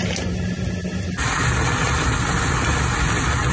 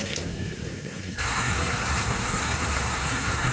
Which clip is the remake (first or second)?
second